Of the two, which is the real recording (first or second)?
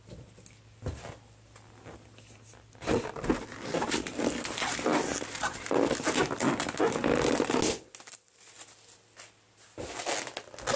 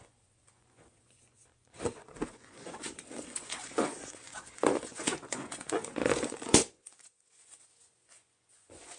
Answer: first